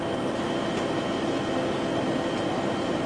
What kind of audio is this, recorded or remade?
recorded